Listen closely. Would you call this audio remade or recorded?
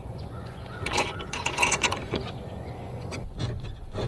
remade